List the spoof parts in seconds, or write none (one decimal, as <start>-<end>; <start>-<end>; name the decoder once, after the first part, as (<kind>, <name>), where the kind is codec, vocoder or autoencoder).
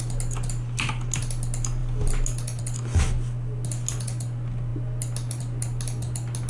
none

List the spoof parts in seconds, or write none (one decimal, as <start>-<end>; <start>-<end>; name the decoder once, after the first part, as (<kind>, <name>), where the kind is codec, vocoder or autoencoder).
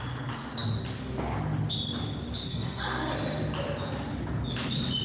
2.5-3.1 (codec, SNAC)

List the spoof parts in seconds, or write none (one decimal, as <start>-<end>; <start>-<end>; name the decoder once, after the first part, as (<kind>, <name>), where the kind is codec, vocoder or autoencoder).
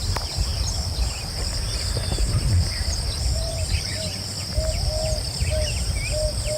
0.0-3.9 (vocoder, BigVGAN v2)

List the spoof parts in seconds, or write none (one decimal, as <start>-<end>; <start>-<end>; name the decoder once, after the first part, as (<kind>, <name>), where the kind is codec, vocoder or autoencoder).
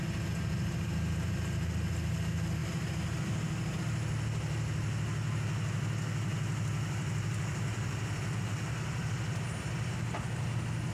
2.6-3.8 (vocoder, BigVGAN v2); 6.3-8.0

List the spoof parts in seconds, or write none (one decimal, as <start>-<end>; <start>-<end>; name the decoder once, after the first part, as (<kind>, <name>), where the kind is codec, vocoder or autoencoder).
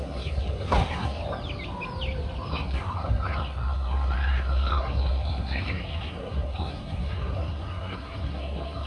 0.0-1.2 (codec, SNAC); 2.5-8.9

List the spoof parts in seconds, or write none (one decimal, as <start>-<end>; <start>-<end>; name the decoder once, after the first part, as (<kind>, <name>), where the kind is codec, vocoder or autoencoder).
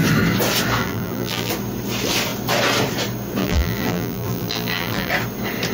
0.8-1.5 (vocoder, BigVGAN v2); 3.4-5.1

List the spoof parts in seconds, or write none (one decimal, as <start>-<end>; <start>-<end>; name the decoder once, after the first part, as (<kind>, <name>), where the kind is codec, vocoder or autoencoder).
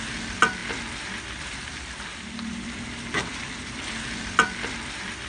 0.0-5.3 (vocoder, BigVGAN v2)